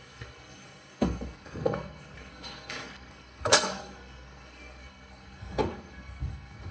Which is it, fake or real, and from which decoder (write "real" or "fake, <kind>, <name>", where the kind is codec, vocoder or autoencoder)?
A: fake, codec, SNAC